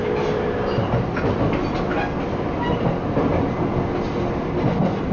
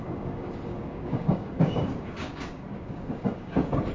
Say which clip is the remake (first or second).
second